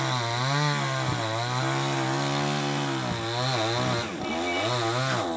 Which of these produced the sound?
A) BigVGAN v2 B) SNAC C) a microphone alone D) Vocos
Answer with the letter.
C